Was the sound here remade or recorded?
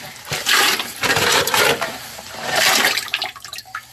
remade